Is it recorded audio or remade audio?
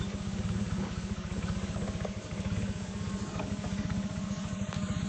remade